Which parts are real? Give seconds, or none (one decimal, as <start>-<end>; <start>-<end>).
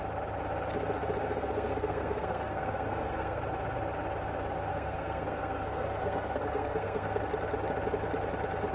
0.0-1.2; 3.4-4.7; 7.2-8.7